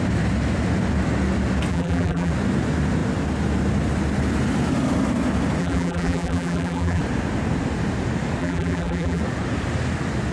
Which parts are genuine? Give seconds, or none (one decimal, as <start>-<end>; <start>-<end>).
0.0-1.7; 2.3-5.6; 7.0-8.4; 9.2-10.3